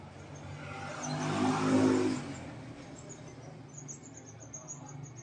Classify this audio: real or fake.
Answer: real